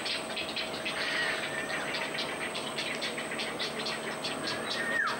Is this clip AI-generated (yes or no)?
no